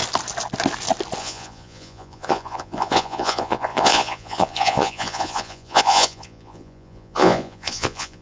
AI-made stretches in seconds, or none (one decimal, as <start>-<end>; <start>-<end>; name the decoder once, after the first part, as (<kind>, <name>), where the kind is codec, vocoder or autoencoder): 1.2-8.2 (vocoder, Vocos)